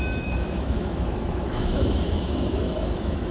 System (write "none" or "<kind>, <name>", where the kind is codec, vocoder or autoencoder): autoencoder, DAC-VAE